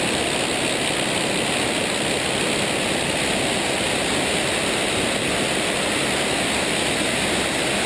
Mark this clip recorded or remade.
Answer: recorded